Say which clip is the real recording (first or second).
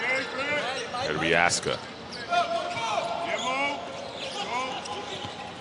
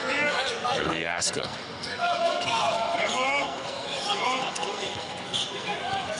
first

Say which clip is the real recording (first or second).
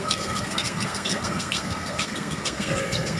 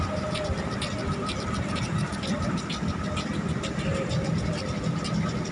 second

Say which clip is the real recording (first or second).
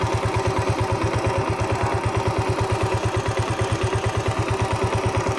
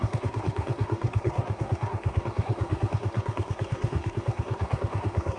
first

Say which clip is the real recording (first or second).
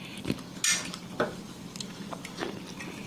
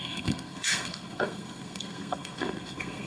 first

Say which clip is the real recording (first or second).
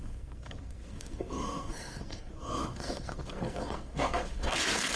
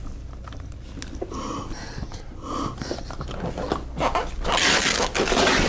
second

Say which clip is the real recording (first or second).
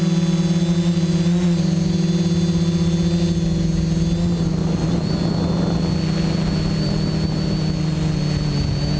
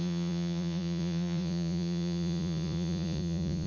first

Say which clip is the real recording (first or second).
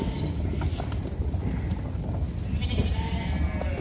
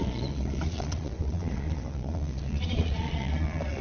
first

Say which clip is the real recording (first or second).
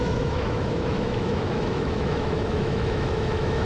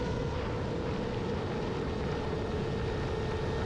second